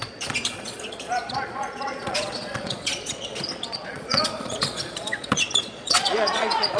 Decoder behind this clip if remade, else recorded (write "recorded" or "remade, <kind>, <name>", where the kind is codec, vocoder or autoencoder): remade, vocoder, Vocos